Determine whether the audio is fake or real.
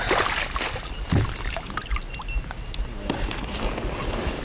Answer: real